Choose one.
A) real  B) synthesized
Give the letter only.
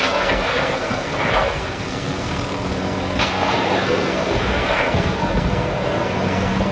B